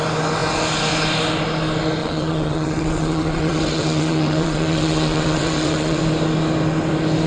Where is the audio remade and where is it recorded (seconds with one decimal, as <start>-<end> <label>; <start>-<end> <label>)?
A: 0.0-2.0 recorded; 2.0-6.0 remade; 6.0-7.3 recorded